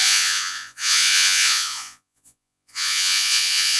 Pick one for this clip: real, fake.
fake